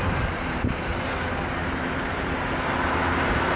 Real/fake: fake